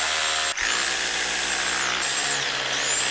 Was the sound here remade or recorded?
recorded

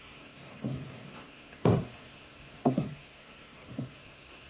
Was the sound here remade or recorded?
remade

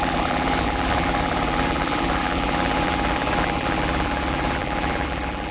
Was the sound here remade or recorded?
remade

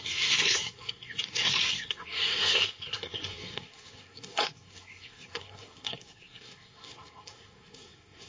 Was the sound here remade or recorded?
remade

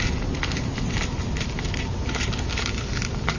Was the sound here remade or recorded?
recorded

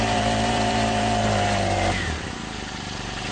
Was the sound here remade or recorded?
remade